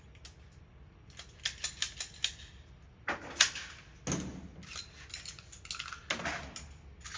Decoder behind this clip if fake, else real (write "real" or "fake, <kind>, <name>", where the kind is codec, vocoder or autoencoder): real